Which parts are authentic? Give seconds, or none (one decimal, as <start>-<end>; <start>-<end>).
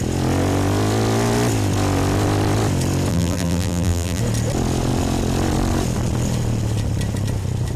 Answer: 0.0-3.1; 4.2-7.8